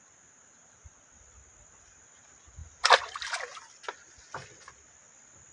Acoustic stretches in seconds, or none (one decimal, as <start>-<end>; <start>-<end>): 0.0-5.5